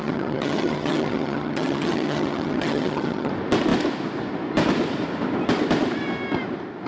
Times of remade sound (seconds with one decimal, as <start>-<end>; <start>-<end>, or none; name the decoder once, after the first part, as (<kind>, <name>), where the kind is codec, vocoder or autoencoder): 0.0-3.3 (vocoder, HiFi-GAN)